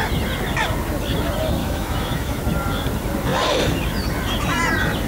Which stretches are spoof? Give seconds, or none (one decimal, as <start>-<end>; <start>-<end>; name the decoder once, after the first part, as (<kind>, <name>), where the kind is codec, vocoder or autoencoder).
1.6-2.4 (autoencoder, DAC-VAE)